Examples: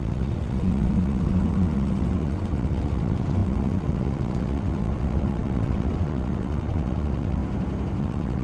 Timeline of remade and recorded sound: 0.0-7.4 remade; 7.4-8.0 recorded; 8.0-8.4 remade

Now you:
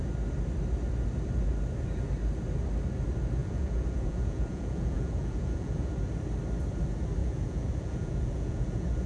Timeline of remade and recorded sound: 0.0-3.4 recorded; 3.4-5.9 remade; 5.9-7.2 recorded; 7.2-9.1 remade

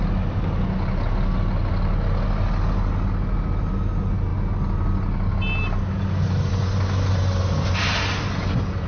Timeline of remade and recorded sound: 0.0-8.9 recorded

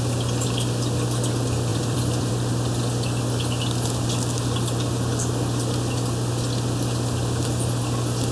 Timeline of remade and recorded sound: 0.0-1.7 recorded; 1.7-2.3 remade; 2.3-8.3 recorded